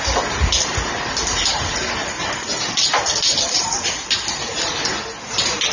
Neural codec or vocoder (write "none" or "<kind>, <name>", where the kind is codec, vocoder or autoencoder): none